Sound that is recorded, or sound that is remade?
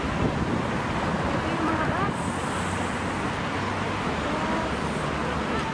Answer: recorded